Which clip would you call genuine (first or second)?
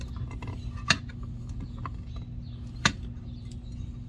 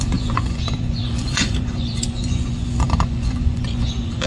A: first